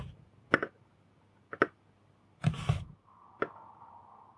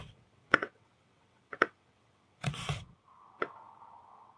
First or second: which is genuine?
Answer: first